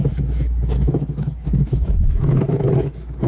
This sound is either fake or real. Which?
fake